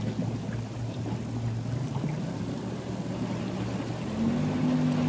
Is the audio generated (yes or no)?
no